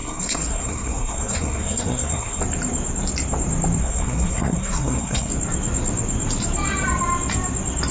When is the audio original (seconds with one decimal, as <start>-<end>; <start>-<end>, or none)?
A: 2.4-3.8; 5.3-7.9